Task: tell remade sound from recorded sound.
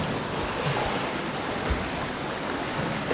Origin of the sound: recorded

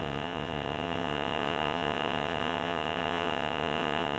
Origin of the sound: remade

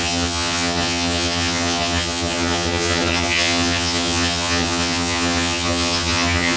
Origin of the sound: remade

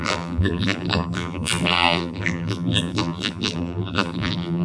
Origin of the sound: remade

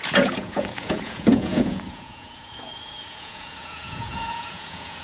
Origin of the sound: remade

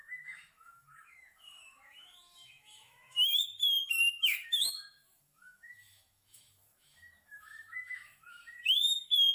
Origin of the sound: remade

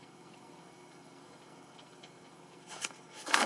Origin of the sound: remade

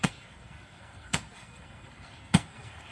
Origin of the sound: remade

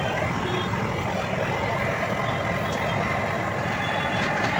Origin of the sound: recorded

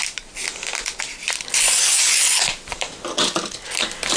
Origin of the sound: recorded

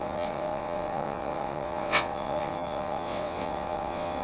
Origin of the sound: remade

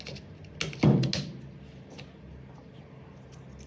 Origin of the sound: recorded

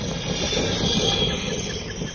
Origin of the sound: recorded